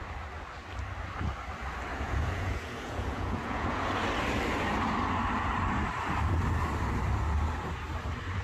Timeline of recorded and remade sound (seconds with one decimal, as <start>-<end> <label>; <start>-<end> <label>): 0.0-1.9 recorded; 1.9-3.8 remade; 3.8-8.4 recorded